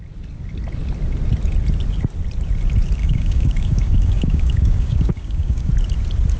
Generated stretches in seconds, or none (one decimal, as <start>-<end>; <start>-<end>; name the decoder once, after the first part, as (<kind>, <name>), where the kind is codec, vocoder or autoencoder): 3.0-5.7 (codec, DAC)